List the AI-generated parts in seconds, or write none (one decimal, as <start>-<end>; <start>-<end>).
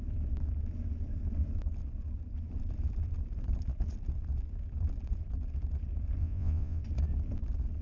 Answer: 6.2-6.8